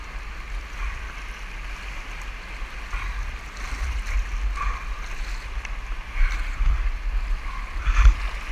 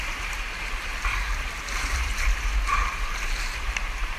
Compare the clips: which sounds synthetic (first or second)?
second